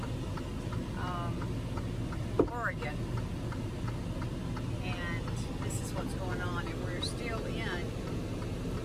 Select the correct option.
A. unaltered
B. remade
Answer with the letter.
A